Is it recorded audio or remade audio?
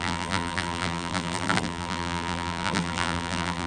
remade